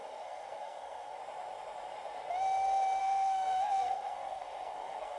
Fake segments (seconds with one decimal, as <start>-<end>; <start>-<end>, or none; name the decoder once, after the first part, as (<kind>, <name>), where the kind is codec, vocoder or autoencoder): 0.0-1.2 (codec, SNAC); 3.0-5.2